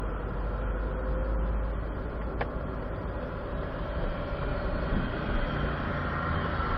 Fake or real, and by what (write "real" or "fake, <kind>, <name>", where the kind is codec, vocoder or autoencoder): real